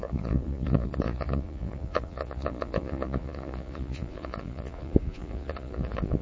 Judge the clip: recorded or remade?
remade